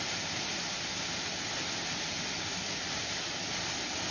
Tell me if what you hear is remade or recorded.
recorded